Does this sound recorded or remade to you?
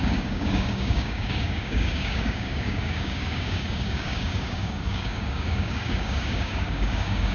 remade